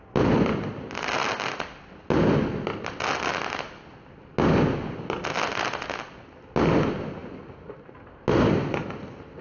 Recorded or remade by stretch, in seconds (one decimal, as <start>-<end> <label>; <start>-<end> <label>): 0.0-9.4 recorded